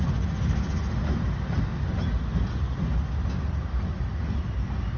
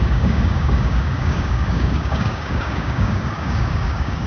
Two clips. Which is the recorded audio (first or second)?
first